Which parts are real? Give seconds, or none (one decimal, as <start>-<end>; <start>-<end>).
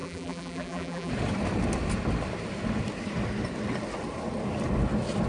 1.1-5.3